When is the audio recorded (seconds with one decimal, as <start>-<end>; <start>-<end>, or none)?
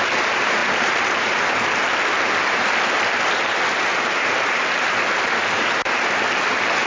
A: 0.0-0.6; 1.4-3.9; 4.9-6.9